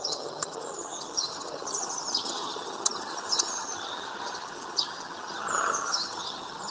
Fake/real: fake